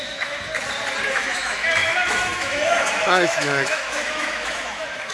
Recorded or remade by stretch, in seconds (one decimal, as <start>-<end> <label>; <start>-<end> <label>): 0.0-0.5 remade; 0.5-1.1 recorded; 1.1-5.1 remade